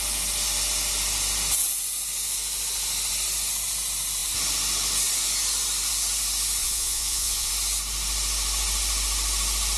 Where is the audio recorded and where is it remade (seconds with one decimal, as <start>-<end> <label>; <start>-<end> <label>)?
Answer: 0.0-6.6 recorded; 6.6-7.5 remade; 7.5-9.8 recorded